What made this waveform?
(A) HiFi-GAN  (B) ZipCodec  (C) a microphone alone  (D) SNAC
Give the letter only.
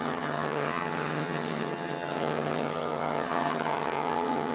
A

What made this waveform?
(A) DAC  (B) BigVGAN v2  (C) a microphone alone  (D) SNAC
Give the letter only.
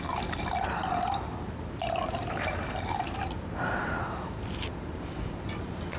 C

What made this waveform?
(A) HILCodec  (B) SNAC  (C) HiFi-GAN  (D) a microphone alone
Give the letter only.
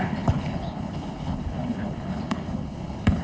A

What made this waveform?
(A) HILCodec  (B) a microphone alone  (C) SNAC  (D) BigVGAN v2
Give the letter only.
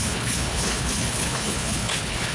A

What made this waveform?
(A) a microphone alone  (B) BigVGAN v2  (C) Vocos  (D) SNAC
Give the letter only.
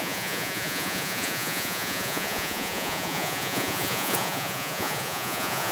C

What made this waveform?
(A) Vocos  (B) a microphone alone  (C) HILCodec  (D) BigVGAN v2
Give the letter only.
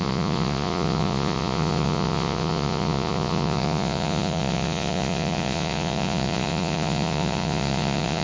A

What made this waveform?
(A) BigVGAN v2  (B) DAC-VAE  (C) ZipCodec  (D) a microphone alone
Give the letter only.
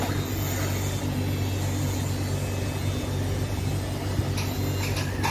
D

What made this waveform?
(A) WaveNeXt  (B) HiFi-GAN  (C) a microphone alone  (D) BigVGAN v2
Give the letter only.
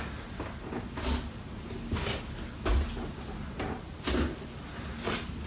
C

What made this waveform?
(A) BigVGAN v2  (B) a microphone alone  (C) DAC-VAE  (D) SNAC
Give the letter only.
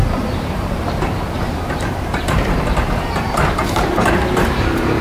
A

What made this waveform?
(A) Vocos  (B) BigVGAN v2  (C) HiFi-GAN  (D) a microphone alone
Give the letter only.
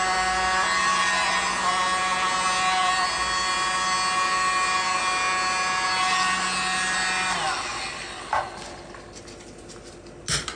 D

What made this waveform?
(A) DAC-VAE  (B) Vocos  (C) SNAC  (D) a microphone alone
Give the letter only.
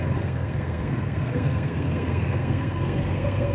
C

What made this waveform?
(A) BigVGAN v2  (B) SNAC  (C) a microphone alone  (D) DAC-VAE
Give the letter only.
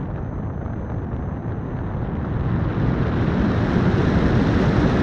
C